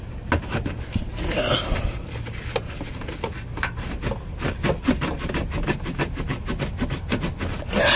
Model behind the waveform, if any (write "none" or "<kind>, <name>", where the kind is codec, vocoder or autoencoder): none